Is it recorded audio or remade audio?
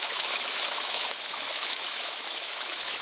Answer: remade